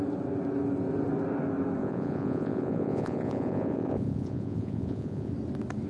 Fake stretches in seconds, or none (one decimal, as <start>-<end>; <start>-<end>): 1.8-5.3